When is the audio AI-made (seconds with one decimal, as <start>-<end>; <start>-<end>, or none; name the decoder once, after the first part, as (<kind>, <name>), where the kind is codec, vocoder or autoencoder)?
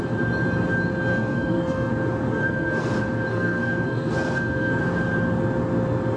1.1-1.9 (codec, SNAC); 2.3-2.9; 3.3-4.8